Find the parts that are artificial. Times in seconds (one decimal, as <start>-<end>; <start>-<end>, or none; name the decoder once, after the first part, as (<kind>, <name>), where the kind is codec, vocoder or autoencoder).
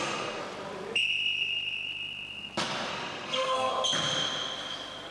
0.0-0.4 (codec, SNAC); 2.9-3.7